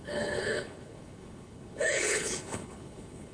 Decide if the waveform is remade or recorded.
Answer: remade